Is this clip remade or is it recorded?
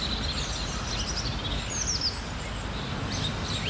recorded